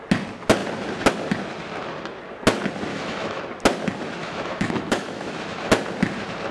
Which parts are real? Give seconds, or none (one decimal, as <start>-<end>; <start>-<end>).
0.0-2.9; 3.4-4.2; 5.7-6.5